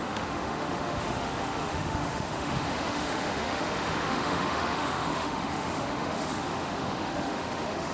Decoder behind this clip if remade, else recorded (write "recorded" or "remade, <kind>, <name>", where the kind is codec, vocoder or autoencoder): remade, autoencoder, DAC-VAE